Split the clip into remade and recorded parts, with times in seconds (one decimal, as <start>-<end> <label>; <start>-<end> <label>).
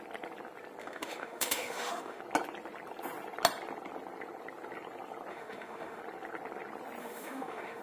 0.0-0.8 recorded; 0.8-2.2 remade; 2.2-5.3 recorded; 5.3-6.0 remade; 6.0-7.0 recorded; 7.0-7.8 remade